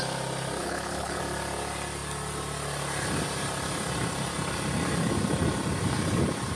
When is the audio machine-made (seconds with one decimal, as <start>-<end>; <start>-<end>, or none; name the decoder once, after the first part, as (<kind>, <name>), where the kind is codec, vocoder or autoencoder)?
0.6-1.2 (codec, HILCodec)

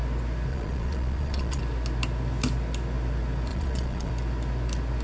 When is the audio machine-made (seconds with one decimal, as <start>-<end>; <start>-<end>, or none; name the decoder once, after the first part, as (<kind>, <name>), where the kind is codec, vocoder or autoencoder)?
0.5-1.6 (vocoder, Vocos); 3.5-4.1